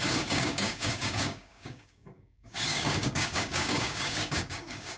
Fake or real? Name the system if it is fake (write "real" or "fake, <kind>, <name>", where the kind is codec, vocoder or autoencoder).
fake, codec, DAC